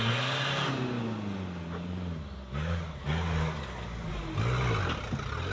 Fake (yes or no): no